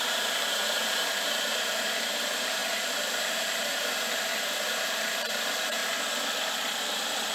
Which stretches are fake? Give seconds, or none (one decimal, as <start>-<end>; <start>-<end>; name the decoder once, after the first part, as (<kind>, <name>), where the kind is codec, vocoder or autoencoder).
0.0-5.8 (vocoder, BigVGAN v2); 6.8-7.3

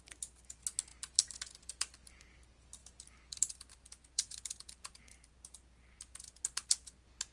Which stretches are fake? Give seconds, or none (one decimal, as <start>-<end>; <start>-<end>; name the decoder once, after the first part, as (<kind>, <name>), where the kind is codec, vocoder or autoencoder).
0.9-2.4 (vocoder, BigVGAN v2); 2.8-5.3

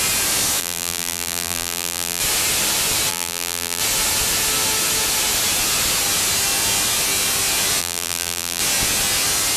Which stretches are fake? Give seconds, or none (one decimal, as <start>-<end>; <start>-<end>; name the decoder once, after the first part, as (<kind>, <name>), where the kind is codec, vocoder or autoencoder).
0.6-2.2 (vocoder, BigVGAN v2); 3.1-3.8; 7.8-8.6

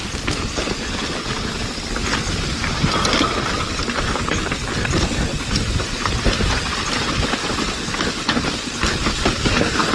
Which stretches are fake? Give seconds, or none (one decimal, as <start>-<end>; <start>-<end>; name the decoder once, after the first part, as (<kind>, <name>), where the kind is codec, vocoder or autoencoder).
5.3-6.6 (vocoder, BigVGAN v2)

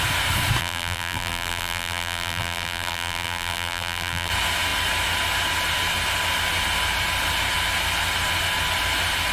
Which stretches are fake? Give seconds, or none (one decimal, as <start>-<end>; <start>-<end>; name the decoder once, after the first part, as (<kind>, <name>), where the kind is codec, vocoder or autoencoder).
0.6-4.3 (vocoder, BigVGAN v2)

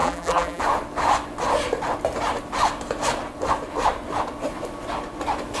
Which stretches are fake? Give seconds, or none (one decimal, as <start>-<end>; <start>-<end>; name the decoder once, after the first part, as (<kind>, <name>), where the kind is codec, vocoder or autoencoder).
0.0-0.6 (vocoder, BigVGAN v2)

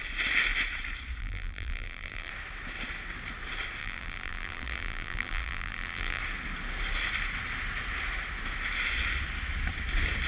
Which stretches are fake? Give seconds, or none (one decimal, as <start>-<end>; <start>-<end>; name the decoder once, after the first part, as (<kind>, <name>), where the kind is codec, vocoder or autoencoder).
1.2-2.3 (vocoder, BigVGAN v2); 3.8-6.2